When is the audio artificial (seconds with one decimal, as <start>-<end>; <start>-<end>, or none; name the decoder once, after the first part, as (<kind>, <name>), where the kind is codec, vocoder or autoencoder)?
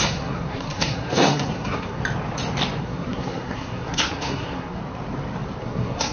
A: 0.0-2.0 (codec, SNAC); 2.8-4.8; 5.6-6.1